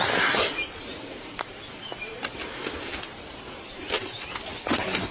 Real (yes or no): no